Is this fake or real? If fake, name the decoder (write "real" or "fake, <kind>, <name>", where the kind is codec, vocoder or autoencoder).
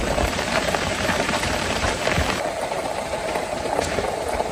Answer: fake, vocoder, BigVGAN v2